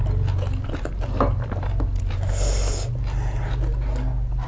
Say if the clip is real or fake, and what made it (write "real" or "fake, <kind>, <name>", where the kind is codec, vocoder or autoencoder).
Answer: real